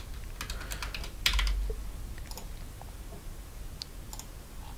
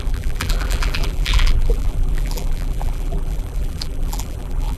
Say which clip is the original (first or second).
first